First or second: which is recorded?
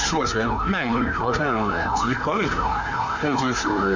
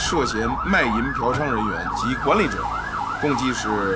second